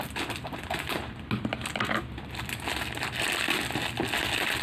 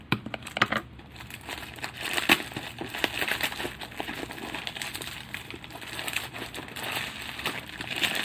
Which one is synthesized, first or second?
second